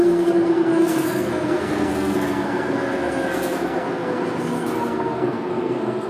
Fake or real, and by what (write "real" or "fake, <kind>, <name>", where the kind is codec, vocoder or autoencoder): fake, codec, SNAC